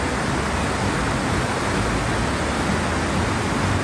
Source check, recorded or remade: recorded